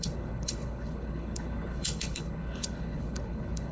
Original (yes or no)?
no